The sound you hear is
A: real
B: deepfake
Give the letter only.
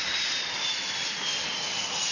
A